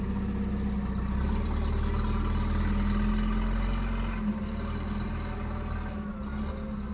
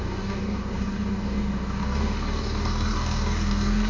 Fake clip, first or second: second